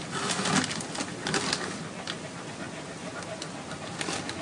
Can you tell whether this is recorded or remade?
recorded